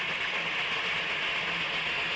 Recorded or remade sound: recorded